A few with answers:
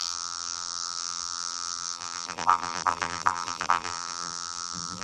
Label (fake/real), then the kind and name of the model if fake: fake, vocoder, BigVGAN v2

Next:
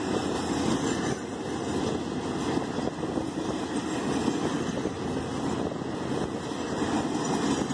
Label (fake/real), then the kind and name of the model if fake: real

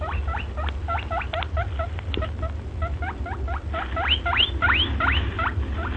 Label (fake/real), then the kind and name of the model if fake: real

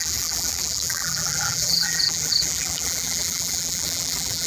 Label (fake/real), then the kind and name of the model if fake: fake, vocoder, BigVGAN v2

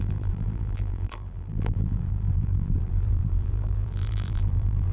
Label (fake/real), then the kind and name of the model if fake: fake, vocoder, BigVGAN v2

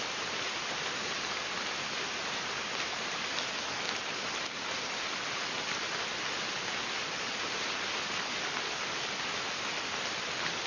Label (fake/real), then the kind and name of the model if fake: real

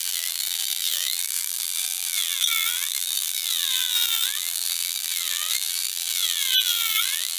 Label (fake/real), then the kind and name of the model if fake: fake, vocoder, BigVGAN v2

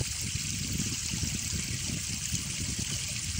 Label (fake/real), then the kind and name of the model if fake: real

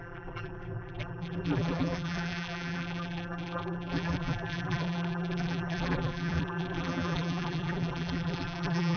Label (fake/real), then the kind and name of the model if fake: fake, vocoder, BigVGAN v2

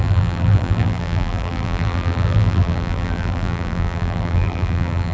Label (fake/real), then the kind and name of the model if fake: fake, vocoder, BigVGAN v2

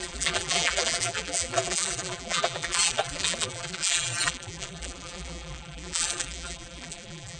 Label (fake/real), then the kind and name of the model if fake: fake, vocoder, BigVGAN v2